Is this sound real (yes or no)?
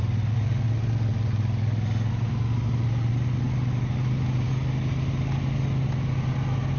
yes